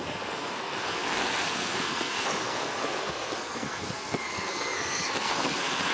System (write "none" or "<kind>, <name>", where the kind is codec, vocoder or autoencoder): codec, SNAC